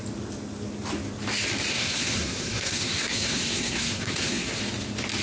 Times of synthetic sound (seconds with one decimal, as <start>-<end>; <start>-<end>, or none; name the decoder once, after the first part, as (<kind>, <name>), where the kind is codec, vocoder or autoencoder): 1.7-4.6 (codec, SNAC)